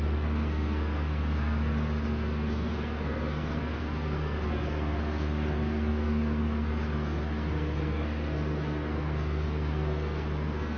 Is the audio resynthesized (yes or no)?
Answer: yes